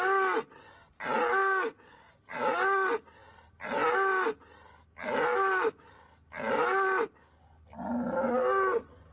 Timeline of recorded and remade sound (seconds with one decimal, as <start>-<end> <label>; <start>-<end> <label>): 0.0-1.4 recorded; 1.4-2.1 remade; 2.1-9.1 recorded